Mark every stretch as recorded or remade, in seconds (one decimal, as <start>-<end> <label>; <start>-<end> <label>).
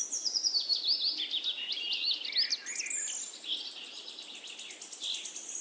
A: 0.0-5.6 recorded